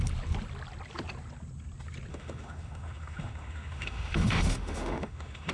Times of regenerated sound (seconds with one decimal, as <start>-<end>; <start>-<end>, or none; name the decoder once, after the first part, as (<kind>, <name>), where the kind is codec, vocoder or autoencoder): 2.1-5.5 (autoencoder, DAC-VAE)